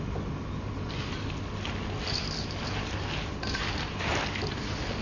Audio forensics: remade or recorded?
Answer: recorded